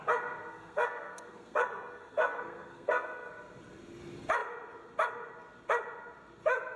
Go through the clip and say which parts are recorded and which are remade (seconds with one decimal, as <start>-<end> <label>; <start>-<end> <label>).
0.0-0.5 recorded; 0.5-3.3 remade; 3.3-6.8 recorded